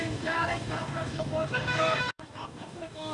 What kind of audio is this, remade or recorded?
remade